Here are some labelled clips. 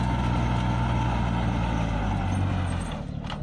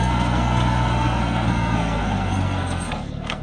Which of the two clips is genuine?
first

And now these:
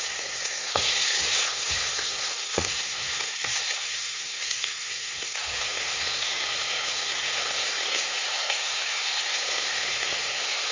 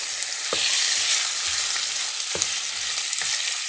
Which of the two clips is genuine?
second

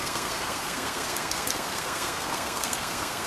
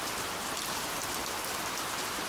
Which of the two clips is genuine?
second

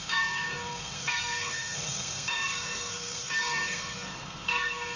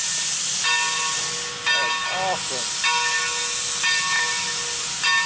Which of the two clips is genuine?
second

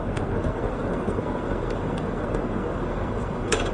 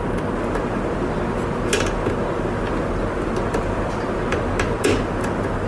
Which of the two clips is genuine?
second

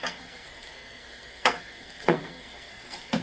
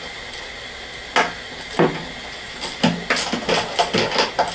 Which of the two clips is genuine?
second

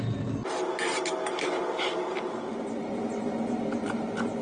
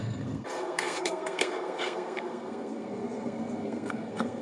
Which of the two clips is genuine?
first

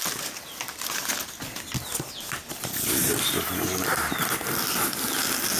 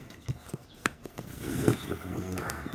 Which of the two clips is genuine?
first